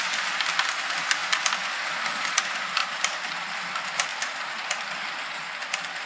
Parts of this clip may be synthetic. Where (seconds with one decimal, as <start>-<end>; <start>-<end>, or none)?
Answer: 2.8-3.6; 4.1-4.9